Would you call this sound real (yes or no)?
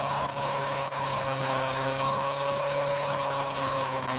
no